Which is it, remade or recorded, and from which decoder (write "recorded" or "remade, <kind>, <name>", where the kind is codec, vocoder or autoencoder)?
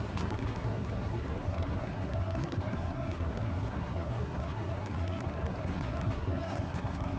remade, codec, SNAC